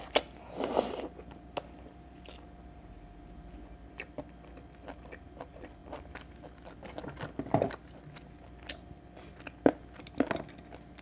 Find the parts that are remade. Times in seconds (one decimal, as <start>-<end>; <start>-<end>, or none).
none